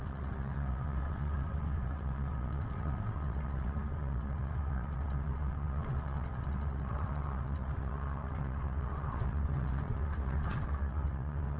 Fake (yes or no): yes